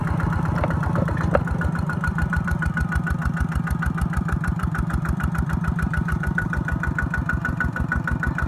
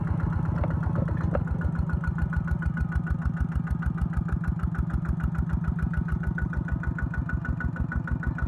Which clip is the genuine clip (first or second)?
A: second